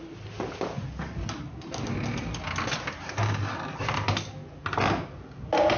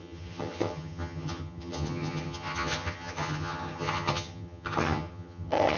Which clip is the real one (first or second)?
first